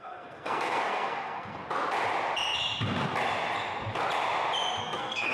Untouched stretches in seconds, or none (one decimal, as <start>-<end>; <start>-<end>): 1.6-4.8